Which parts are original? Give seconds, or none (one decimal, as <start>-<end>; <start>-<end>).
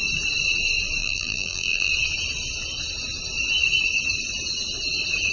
0.0-1.0; 1.9-5.3